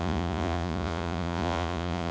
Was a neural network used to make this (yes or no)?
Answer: yes